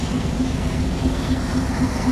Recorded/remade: remade